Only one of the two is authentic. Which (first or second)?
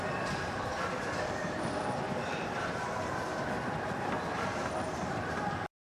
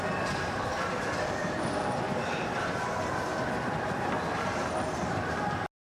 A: second